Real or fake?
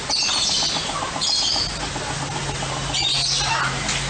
real